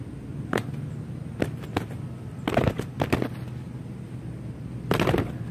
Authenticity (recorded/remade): recorded